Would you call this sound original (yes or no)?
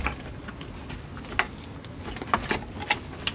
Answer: yes